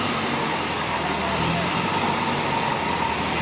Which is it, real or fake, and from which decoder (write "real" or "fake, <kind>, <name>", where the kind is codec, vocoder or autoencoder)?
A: real